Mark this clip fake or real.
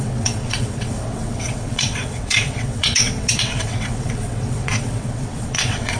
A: fake